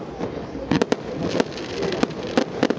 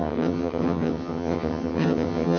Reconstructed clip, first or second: second